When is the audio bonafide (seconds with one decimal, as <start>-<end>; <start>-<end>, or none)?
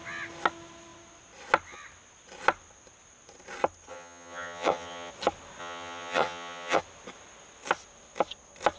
0.0-3.9; 5.1-5.6; 6.8-8.8